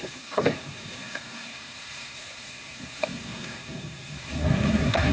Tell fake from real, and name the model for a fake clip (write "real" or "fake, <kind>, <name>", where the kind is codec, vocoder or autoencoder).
fake, codec, SNAC